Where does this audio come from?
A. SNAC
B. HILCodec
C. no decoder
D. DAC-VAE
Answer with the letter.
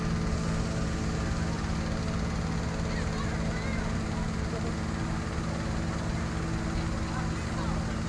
C